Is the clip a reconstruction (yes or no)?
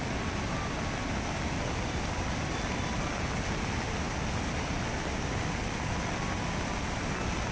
no